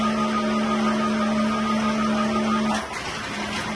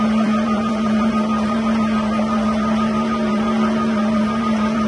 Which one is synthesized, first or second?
second